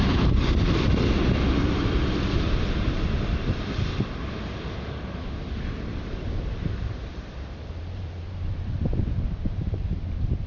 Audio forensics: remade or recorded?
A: remade